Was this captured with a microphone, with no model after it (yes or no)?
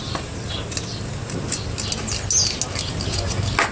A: yes